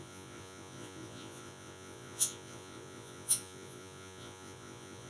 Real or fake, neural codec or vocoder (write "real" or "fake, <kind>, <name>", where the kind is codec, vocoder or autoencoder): fake, vocoder, Vocos